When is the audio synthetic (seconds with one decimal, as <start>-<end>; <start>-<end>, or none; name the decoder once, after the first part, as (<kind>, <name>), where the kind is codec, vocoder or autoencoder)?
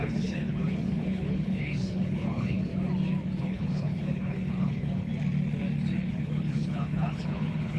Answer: 0.0-2.7 (codec, HILCodec); 3.4-5.1; 6.1-7.8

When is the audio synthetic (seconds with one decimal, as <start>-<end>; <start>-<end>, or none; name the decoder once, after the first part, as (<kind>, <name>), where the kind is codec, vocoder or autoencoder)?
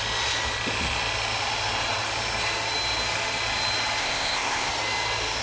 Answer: 4.0-4.7 (codec, ZipCodec)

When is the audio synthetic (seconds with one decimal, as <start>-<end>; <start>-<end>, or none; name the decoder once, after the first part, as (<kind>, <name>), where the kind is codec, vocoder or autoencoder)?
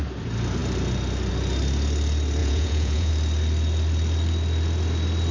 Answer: 2.4-3.1 (vocoder, Vocos)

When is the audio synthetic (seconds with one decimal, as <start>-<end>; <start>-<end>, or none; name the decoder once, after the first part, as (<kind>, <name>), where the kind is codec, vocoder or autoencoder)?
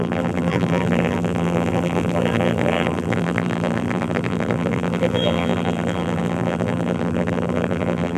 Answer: 0.0-8.2 (vocoder, BigVGAN v2)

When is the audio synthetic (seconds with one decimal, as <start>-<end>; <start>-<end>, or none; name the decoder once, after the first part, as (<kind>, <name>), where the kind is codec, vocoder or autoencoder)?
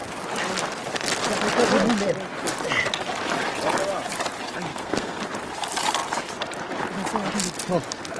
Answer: 4.7-5.2 (codec, SNAC)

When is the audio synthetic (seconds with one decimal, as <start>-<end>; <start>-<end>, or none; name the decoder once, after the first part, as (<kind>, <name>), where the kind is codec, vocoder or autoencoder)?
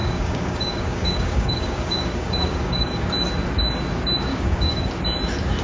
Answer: 0.0-3.1 (codec, DAC); 4.3-4.9